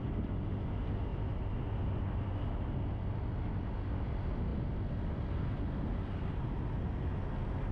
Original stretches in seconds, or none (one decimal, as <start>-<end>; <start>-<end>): 0.0-7.7